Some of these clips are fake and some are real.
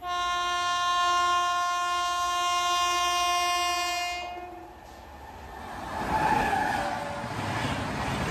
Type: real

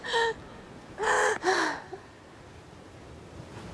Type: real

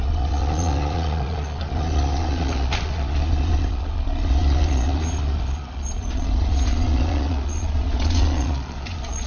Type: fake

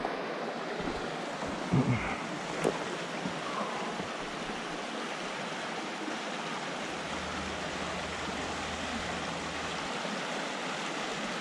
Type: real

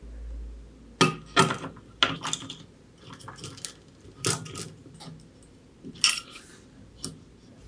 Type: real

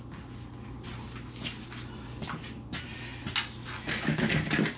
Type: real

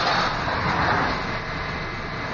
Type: real